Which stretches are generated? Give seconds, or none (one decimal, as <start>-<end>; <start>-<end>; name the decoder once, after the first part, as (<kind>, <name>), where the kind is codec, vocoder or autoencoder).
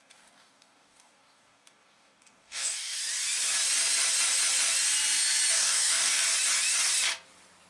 0.0-3.0 (codec, DAC); 5.5-6.2